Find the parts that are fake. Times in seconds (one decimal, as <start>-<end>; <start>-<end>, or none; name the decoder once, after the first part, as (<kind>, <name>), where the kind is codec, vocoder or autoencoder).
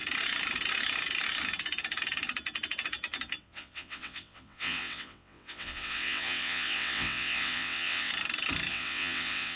3.4-8.1 (vocoder, WaveNeXt); 8.7-9.6